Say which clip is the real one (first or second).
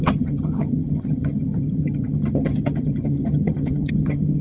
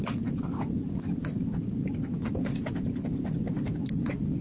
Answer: second